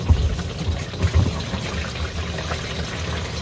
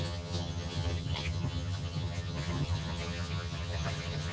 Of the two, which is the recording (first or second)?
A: first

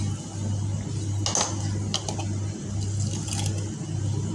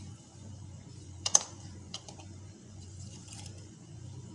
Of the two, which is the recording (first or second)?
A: first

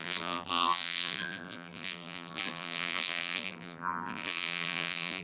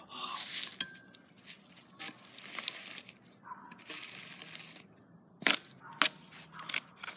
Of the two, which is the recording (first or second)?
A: second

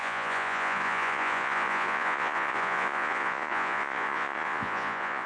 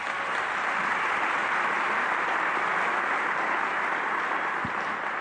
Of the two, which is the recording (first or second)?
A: second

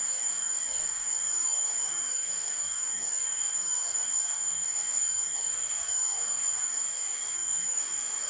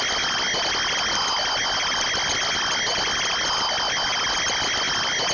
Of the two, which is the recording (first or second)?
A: second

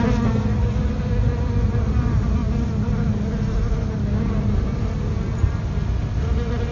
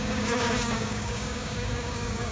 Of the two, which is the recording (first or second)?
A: first